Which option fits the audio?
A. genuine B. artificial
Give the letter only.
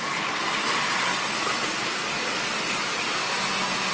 A